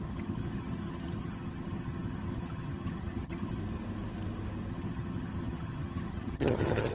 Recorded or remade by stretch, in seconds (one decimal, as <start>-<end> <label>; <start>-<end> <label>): 0.0-3.6 remade; 3.6-4.7 recorded; 4.7-6.9 remade

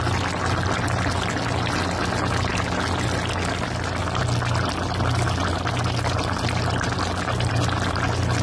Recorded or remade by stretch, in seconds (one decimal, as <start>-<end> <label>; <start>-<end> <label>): 0.0-8.4 recorded

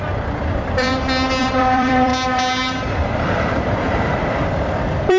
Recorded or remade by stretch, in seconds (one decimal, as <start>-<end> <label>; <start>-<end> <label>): 0.0-0.9 remade; 0.9-1.4 recorded; 1.4-2.1 remade; 2.1-2.8 recorded; 2.8-5.2 remade